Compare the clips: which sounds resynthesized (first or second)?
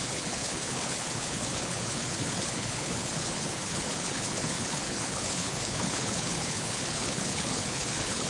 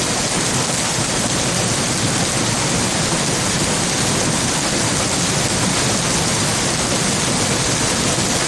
first